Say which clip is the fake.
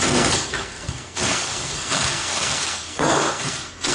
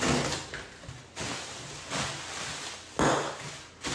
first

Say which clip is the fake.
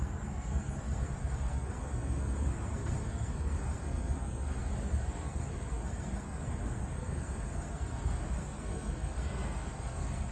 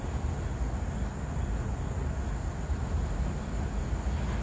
first